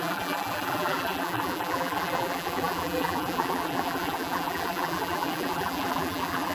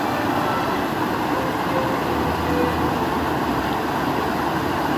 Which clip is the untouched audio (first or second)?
second